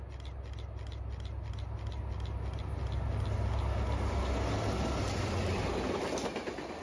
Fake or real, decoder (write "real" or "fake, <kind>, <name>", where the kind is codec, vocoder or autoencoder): real